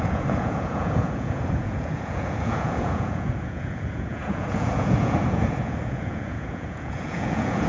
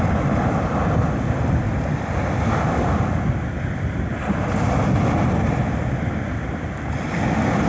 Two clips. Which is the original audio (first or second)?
second